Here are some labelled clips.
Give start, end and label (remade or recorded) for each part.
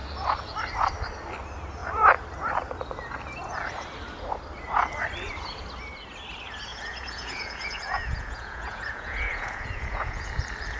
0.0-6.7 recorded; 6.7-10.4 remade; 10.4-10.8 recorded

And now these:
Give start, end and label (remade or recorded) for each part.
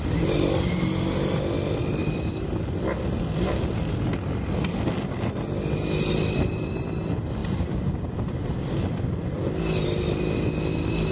0.0-11.1 recorded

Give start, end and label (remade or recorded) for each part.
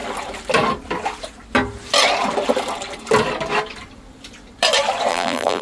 0.0-5.1 recorded; 5.1-5.6 remade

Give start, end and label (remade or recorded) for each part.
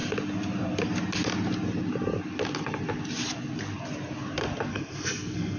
0.0-4.7 recorded; 4.7-5.6 remade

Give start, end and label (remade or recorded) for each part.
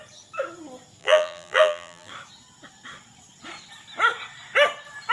0.0-1.0 recorded; 1.0-2.1 remade; 2.1-5.1 recorded